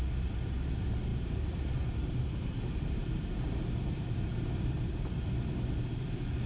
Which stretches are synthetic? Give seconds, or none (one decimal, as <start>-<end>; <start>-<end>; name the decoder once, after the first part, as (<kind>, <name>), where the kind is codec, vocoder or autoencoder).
1.1-5.0 (vocoder, BigVGAN v2)